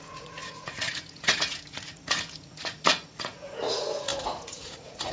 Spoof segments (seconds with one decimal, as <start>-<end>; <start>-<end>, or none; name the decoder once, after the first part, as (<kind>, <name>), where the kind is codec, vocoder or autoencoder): 0.0-5.1 (vocoder, Vocos)